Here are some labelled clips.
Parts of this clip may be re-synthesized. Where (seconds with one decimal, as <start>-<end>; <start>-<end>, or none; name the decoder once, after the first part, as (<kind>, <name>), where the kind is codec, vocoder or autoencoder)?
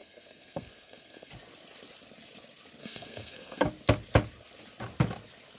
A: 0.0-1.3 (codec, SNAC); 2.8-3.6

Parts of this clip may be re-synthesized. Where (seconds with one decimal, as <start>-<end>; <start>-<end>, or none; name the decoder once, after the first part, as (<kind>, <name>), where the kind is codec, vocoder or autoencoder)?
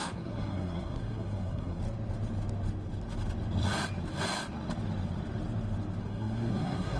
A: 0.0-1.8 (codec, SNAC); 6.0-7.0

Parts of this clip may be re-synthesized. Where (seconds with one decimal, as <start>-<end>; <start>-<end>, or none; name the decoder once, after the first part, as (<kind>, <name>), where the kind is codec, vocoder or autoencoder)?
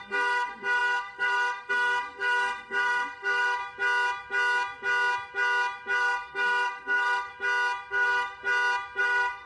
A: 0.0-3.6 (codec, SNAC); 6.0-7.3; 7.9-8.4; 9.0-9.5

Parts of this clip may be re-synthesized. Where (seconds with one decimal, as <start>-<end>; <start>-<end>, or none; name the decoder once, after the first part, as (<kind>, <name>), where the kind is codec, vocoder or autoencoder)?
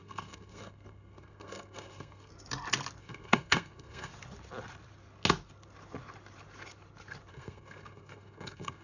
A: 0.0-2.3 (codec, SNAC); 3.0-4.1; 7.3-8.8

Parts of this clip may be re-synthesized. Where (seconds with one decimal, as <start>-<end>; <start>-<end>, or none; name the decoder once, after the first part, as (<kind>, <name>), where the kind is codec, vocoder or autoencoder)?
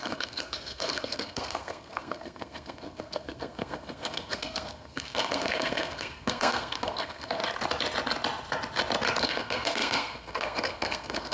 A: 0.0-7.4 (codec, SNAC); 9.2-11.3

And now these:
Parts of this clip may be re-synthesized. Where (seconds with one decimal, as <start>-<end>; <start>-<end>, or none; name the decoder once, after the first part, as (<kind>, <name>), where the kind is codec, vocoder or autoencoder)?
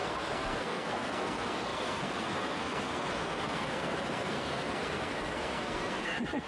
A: 0.0-6.5 (codec, SNAC)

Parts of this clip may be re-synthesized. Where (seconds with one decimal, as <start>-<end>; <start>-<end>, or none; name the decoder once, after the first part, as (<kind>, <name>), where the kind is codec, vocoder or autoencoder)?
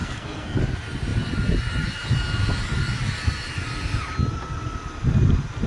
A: 0.0-0.6 (codec, SNAC)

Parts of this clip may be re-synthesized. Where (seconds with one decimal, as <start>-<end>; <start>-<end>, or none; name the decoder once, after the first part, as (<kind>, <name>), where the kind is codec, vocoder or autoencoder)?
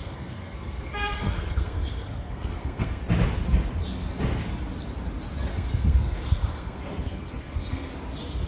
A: 0.0-3.0 (codec, SNAC); 5.5-7.9